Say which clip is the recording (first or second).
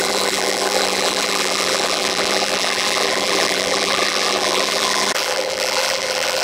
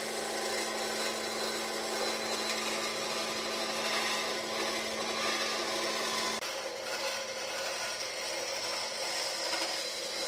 second